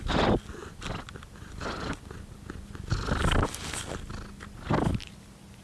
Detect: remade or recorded recorded